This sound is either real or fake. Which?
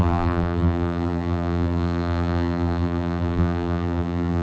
fake